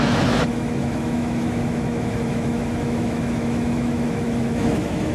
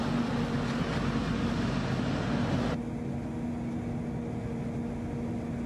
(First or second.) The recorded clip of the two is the second